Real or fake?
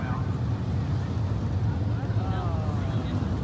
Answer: real